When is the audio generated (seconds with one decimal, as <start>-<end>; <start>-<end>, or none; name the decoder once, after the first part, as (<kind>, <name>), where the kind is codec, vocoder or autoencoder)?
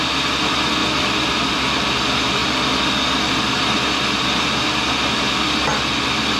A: none